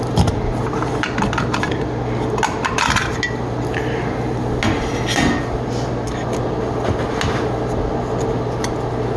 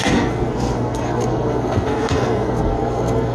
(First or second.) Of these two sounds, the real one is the first